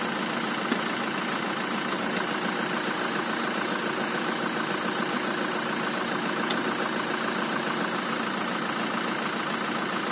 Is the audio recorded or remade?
recorded